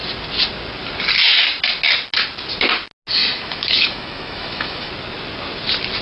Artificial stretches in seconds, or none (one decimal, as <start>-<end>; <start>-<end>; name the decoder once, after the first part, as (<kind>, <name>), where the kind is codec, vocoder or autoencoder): 3.2-4.9 (autoencoder, DAC-VAE)